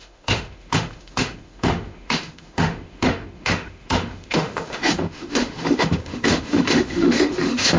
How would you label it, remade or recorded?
remade